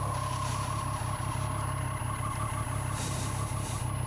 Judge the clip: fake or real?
real